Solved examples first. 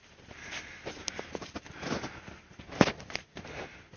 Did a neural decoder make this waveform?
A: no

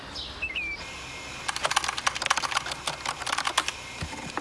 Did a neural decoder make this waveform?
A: no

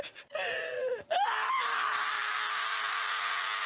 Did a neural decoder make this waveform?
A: no